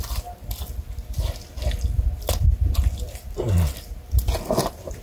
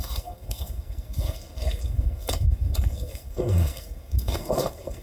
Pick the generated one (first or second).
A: second